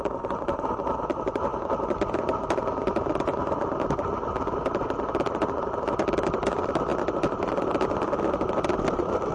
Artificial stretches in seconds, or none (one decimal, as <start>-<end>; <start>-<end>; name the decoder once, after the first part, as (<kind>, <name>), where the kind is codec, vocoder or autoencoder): none